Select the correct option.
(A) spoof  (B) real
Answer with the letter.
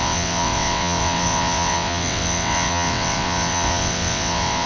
A